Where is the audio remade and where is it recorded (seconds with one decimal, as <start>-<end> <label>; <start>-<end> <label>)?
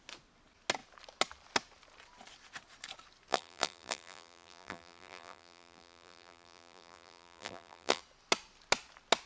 0.0-3.3 recorded; 3.3-8.0 remade; 8.0-9.3 recorded